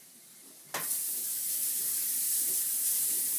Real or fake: real